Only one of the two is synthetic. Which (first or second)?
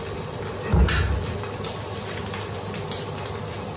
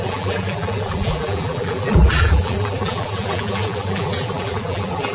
second